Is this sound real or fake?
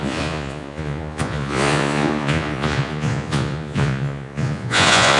fake